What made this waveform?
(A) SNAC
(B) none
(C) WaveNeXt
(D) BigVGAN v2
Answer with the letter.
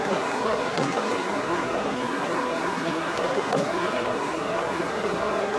A